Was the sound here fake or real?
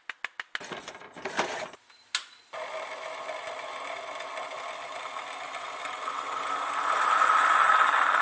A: real